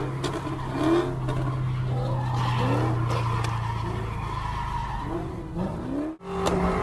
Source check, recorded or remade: recorded